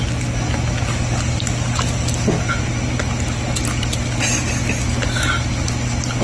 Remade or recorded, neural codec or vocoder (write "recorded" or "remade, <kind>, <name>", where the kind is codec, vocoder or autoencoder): recorded